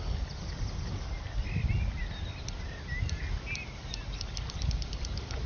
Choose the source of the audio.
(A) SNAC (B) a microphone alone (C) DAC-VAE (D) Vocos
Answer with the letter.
B